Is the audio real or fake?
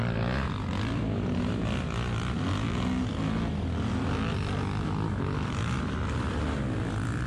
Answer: real